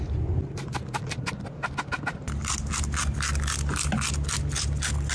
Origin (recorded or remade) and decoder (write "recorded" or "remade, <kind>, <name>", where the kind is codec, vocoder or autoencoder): recorded